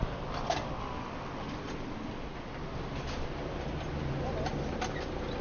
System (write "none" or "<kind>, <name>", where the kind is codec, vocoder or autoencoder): none